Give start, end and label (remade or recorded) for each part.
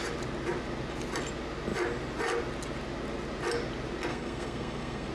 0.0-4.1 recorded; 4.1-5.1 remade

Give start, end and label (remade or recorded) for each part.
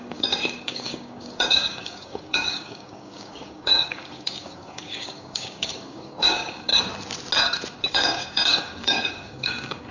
0.0-6.7 remade; 6.7-7.9 recorded; 7.9-9.9 remade